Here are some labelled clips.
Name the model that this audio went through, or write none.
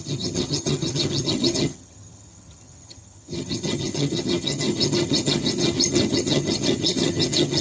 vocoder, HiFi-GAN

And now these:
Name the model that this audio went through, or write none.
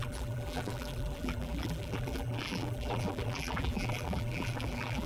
vocoder, BigVGAN v2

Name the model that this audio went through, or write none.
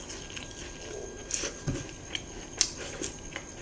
none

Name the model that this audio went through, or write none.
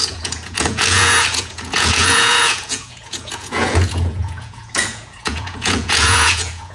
vocoder, Vocos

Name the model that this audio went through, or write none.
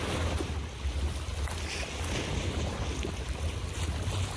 none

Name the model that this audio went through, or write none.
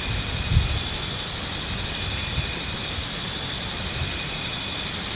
none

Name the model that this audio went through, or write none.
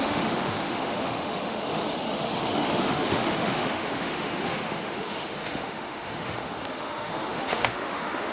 autoencoder, DAC-VAE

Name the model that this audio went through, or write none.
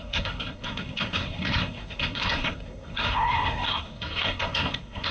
codec, SNAC